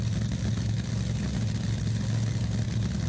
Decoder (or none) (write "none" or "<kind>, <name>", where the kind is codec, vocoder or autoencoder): none